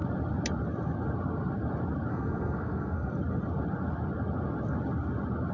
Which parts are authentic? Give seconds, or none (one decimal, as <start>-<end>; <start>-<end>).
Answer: 0.0-2.1; 3.1-5.5